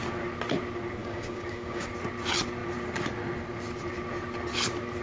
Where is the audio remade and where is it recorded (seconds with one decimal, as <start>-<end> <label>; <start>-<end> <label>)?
0.0-1.0 recorded; 1.0-1.9 remade; 1.9-5.0 recorded